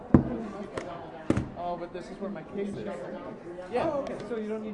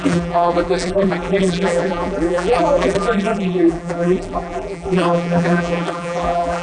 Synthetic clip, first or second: second